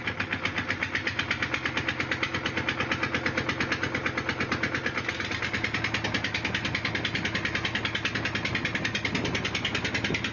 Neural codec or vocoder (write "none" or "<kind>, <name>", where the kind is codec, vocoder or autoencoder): none